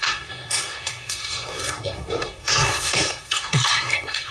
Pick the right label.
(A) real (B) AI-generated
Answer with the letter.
B